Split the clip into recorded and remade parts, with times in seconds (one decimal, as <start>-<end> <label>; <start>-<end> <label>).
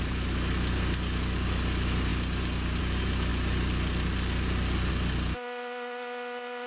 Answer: 0.0-6.7 recorded